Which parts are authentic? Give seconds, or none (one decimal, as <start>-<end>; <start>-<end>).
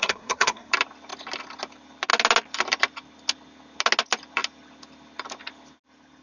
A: 0.7-6.2